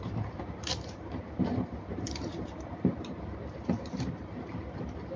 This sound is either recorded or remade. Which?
remade